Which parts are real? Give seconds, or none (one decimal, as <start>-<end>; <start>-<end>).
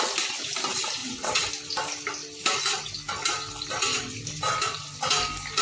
0.0-1.0; 1.5-5.6